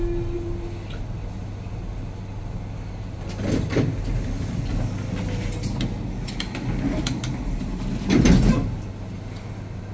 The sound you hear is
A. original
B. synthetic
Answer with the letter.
A